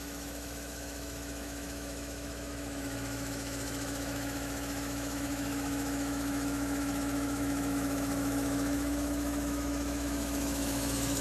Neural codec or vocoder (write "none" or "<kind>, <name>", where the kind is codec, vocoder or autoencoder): autoencoder, DAC-VAE